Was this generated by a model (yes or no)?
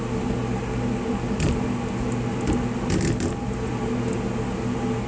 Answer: no